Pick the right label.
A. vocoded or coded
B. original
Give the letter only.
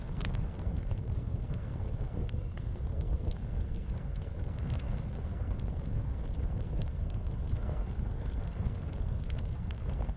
A